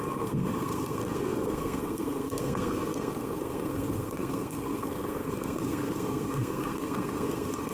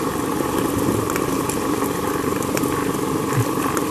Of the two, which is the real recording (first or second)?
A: second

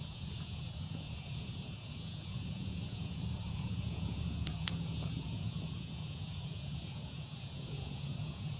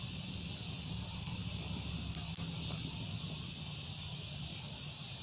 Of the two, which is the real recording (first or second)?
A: second